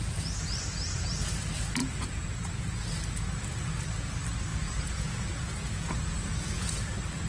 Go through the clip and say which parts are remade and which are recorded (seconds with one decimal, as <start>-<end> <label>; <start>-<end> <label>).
0.0-1.8 recorded; 1.8-2.9 remade; 2.9-4.5 recorded; 4.5-6.8 remade; 6.8-7.3 recorded